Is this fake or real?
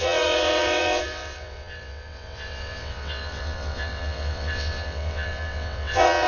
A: fake